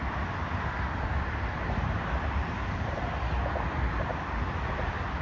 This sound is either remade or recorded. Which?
recorded